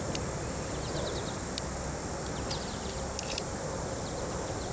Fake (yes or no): no